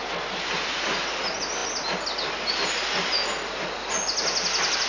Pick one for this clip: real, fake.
real